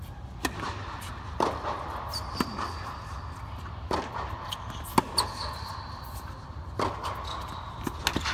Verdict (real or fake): real